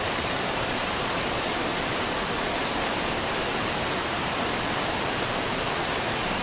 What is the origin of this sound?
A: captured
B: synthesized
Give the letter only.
B